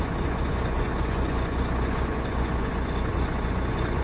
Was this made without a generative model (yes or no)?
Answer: no